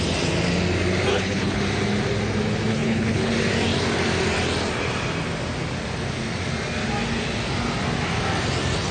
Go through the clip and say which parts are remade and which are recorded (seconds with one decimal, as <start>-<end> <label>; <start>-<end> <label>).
0.0-1.1 recorded; 1.1-1.6 remade; 1.6-2.7 recorded; 2.7-3.3 remade; 3.3-8.9 recorded